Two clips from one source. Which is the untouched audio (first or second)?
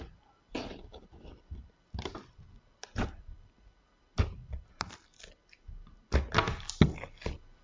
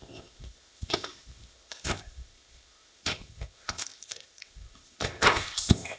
first